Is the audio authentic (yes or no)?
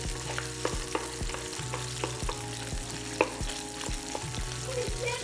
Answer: yes